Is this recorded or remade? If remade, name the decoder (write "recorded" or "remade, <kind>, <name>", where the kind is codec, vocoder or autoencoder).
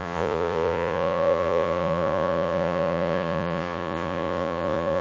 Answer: remade, vocoder, Vocos